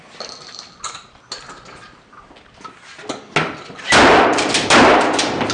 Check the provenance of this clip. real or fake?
real